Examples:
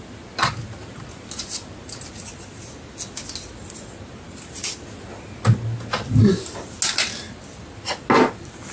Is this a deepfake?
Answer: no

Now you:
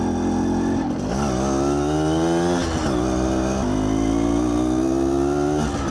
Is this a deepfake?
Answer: no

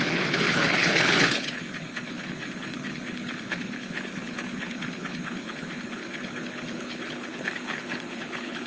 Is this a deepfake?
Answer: yes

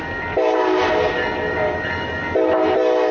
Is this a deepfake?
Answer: no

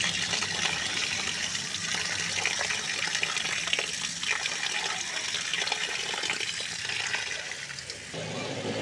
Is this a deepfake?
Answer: no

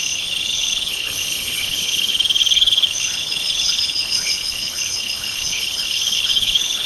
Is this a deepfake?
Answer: yes